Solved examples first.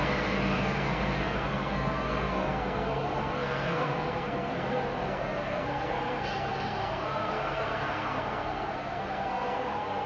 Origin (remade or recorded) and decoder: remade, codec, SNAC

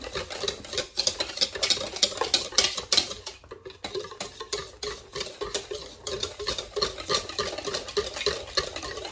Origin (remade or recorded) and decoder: recorded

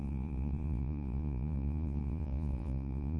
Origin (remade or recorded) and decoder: remade, vocoder, Vocos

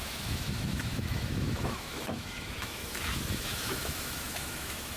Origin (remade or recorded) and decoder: remade, autoencoder, DAC-VAE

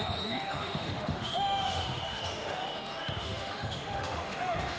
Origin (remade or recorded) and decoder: remade, autoencoder, DAC-VAE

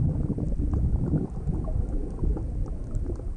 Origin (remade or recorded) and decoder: recorded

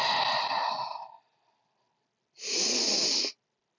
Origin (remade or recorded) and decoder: recorded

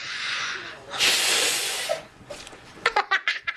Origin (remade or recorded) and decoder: remade, vocoder, Vocos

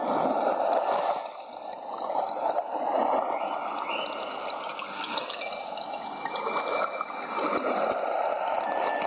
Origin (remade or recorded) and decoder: recorded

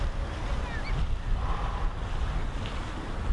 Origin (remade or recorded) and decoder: recorded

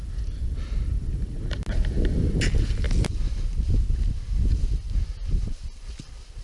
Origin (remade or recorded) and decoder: recorded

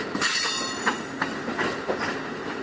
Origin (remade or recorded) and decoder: recorded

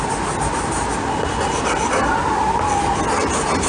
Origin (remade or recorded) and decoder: recorded